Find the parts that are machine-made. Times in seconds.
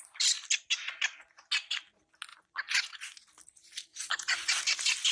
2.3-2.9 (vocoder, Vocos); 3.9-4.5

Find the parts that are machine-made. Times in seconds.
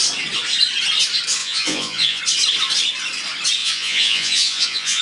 1.4-2.2 (vocoder, Vocos); 3.6-5.0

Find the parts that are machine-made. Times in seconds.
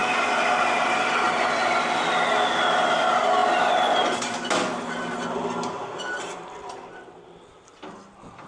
none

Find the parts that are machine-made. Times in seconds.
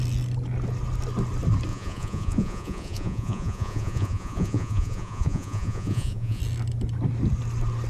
1.7-6.4 (vocoder, Vocos)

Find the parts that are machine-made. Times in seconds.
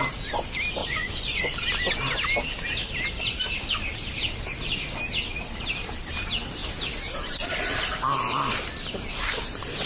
0.8-1.4 (vocoder, Vocos)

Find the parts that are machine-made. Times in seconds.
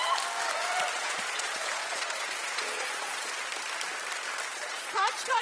0.9-3.3 (vocoder, Vocos); 4.5-5.4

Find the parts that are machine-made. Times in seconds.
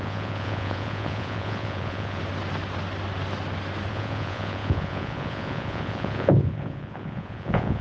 0.0-2.2 (vocoder, Vocos); 3.9-7.8